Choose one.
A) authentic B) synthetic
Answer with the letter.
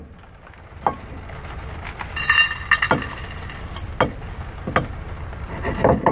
A